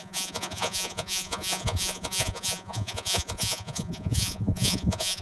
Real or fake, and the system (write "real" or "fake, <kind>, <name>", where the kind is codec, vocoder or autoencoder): fake, vocoder, Vocos